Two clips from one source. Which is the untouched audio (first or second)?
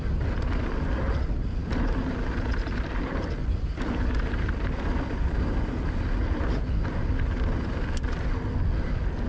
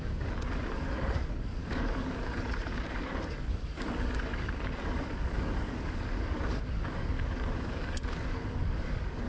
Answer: first